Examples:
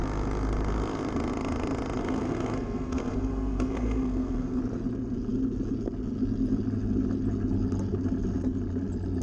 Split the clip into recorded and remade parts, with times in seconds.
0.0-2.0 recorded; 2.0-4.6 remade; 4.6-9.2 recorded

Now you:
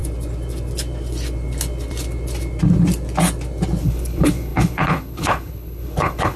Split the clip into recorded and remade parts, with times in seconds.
0.0-3.8 recorded; 3.8-6.4 remade

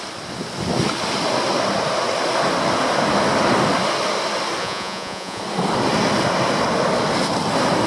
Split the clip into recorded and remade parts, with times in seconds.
0.0-4.6 recorded; 4.6-5.4 remade; 5.4-7.9 recorded

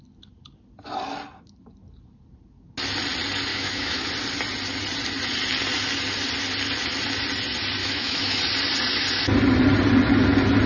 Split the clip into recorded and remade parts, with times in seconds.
0.0-3.5 recorded; 3.5-4.1 remade; 4.1-7.8 recorded; 7.8-8.4 remade; 8.4-10.7 recorded

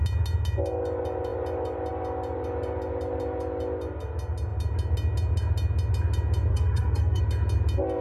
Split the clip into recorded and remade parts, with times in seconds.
0.0-6.5 recorded; 6.5-7.2 remade; 7.2-8.0 recorded

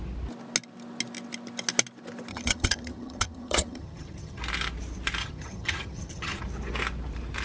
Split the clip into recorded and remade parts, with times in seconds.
0.0-2.3 recorded; 2.3-4.4 remade; 4.4-5.2 recorded; 5.2-6.4 remade; 6.4-7.4 recorded

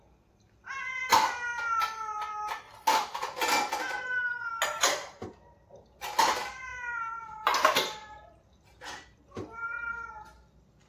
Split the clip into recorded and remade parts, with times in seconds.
0.0-10.9 recorded